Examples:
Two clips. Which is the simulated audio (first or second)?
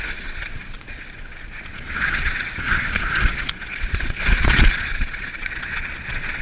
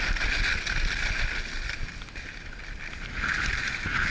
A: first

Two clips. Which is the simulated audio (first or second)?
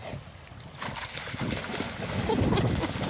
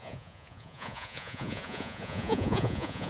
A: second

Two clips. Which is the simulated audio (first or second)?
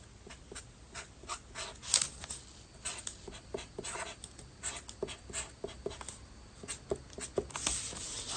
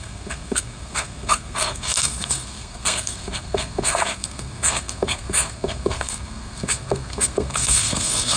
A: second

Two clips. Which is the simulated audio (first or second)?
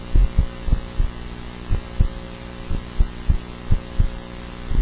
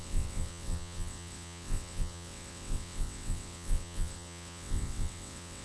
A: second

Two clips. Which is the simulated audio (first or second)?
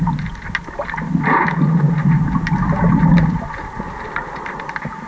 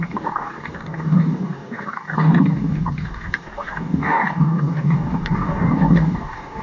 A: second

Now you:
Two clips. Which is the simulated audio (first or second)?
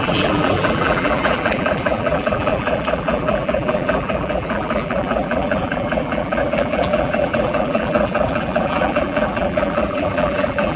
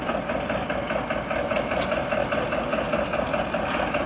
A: first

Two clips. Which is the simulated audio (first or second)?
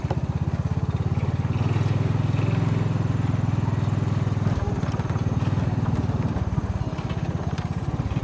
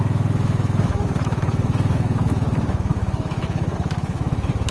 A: second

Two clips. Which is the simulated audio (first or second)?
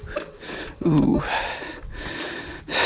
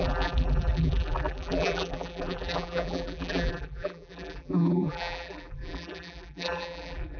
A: second